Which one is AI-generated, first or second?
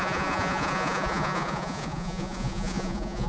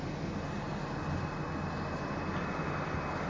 first